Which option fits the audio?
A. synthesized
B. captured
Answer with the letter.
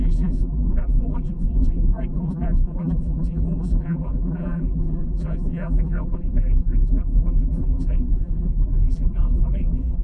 A